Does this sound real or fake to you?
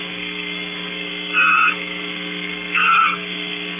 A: fake